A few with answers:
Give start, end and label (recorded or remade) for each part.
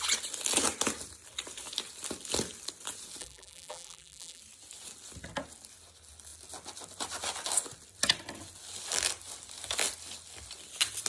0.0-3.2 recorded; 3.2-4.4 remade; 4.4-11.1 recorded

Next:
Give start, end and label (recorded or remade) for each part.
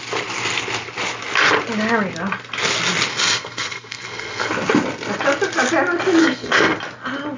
0.0-3.1 recorded; 3.1-4.5 remade; 4.5-6.2 recorded; 6.2-6.8 remade; 6.8-7.4 recorded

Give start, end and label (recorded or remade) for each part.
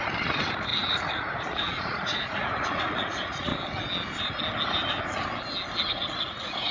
0.0-3.5 remade; 3.5-5.9 recorded; 5.9-6.7 remade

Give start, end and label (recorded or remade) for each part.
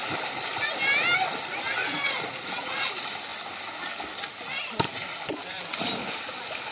0.0-1.8 recorded; 1.8-2.9 remade; 2.9-6.7 recorded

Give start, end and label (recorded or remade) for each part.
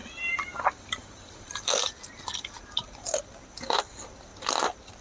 0.0-5.0 recorded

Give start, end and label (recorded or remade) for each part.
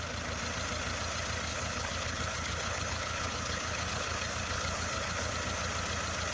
0.0-1.5 recorded; 1.5-5.3 remade; 5.3-6.3 recorded